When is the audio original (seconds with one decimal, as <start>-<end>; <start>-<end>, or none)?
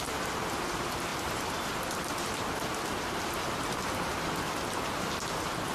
0.0-5.7